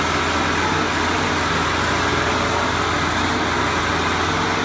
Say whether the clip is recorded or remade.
recorded